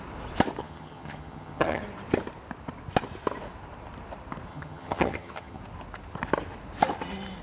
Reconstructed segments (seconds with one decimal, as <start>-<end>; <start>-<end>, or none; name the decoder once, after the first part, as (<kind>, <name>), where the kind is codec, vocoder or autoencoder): 0.6-1.8 (vocoder, HiFi-GAN); 4.5-5.6